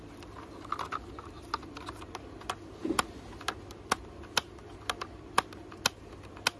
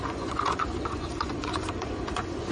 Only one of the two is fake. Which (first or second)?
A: second